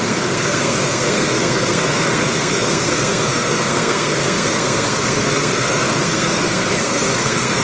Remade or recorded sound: remade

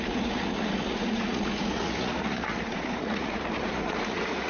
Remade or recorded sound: remade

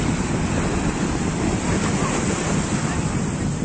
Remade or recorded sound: recorded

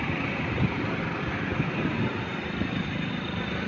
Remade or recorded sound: recorded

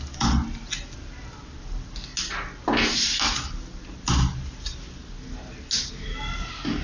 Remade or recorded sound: recorded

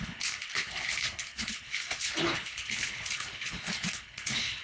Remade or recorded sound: remade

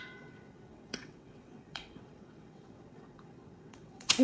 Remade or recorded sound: remade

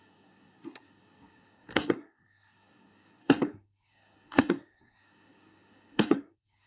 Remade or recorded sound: remade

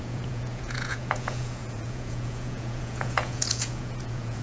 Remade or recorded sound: remade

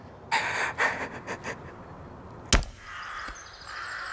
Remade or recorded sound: recorded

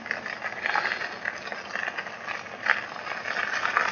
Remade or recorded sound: recorded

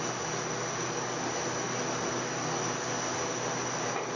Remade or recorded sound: recorded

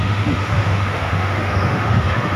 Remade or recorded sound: remade